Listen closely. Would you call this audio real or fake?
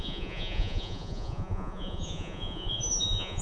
fake